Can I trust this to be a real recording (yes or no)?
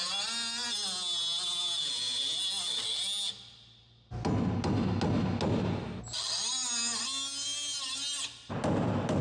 yes